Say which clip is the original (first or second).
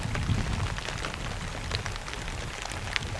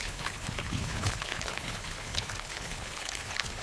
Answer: first